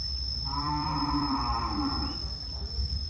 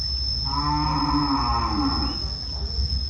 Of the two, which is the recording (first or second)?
second